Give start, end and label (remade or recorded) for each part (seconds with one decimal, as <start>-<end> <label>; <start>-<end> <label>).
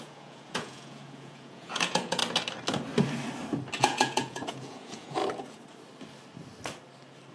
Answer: 0.0-2.2 remade; 2.2-3.8 recorded; 3.8-5.2 remade; 5.2-7.3 recorded